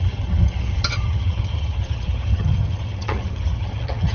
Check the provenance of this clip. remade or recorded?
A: remade